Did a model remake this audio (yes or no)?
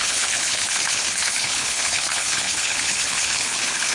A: yes